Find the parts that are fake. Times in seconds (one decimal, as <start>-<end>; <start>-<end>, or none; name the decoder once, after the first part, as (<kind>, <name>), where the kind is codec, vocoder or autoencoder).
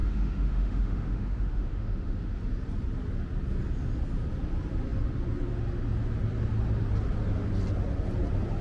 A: 0.0-2.3 (autoencoder, DAC-VAE)